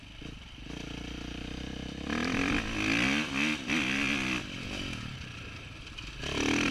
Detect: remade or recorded recorded